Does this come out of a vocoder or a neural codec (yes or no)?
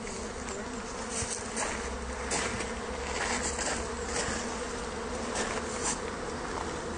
no